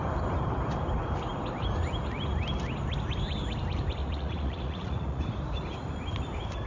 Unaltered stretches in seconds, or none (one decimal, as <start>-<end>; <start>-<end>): 0.0-4.0; 5.2-6.7